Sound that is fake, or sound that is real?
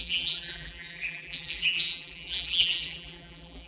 fake